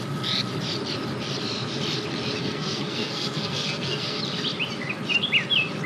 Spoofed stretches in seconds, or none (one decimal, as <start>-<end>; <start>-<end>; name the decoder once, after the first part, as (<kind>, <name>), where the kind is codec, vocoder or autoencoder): 2.4-4.2 (codec, SNAC)

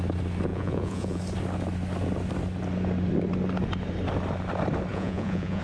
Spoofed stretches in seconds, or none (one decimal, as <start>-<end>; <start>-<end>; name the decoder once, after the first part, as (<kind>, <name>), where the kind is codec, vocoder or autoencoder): 0.5-1.2 (vocoder, Vocos); 4.9-5.6

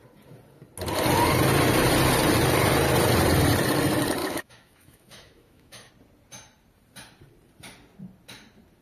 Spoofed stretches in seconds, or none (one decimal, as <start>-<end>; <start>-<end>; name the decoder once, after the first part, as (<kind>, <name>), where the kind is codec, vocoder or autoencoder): 4.2-5.9 (autoencoder, DAC-VAE)

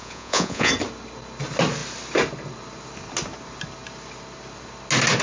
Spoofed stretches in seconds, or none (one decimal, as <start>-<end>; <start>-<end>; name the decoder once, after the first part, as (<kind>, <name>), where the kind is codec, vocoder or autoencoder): 0.0-0.7 (vocoder, Vocos)

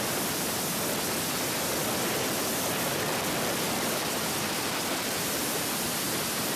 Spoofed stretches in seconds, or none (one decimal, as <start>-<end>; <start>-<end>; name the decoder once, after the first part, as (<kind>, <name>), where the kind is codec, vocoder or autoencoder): 0.0-1.8 (vocoder, BigVGAN v2); 2.5-6.6

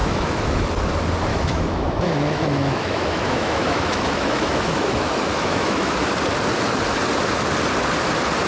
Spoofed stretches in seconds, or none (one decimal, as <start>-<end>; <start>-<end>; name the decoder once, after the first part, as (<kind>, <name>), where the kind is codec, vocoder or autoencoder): 0.0-0.7 (autoencoder, DAC-VAE); 1.3-6.0

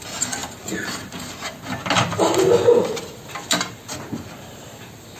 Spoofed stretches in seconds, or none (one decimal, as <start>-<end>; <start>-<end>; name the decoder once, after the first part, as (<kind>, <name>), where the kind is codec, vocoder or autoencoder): none

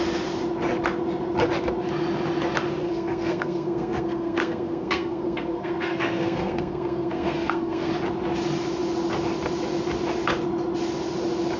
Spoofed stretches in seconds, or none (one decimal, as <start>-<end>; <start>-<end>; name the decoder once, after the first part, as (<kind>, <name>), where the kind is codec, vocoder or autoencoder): 2.8-7.9 (codec, SNAC)